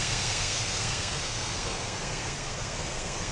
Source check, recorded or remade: remade